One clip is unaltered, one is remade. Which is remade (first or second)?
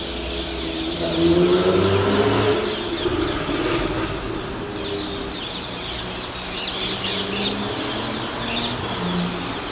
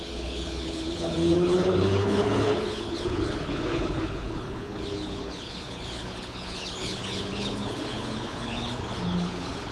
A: second